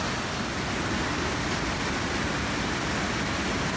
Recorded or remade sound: recorded